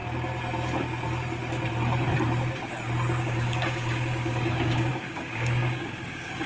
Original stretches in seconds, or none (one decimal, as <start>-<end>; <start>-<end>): 0.0-3.2